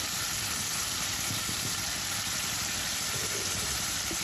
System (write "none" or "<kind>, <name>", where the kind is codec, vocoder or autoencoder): vocoder, BigVGAN v2